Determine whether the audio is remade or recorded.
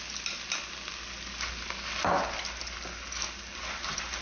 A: recorded